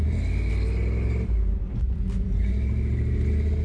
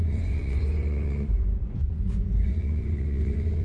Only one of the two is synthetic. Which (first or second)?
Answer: second